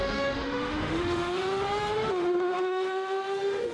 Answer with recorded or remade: remade